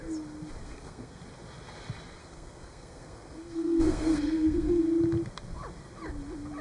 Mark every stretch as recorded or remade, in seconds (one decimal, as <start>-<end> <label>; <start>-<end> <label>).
0.0-0.6 recorded; 0.6-1.2 remade; 1.2-2.2 recorded; 2.2-4.8 remade; 4.8-6.6 recorded